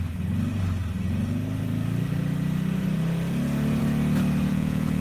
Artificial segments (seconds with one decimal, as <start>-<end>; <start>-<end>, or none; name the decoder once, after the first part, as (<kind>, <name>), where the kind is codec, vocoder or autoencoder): 4.5-5.0 (vocoder, Vocos)